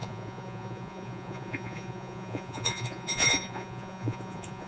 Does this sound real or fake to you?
fake